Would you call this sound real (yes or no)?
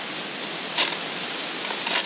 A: yes